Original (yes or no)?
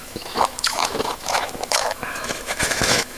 no